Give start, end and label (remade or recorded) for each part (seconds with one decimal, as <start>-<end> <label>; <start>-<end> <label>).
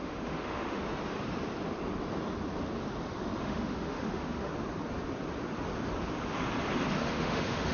0.0-0.8 remade; 0.8-3.4 recorded; 3.4-4.5 remade; 4.5-7.0 recorded; 7.0-7.7 remade